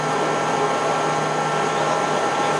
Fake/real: real